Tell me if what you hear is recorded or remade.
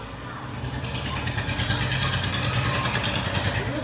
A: recorded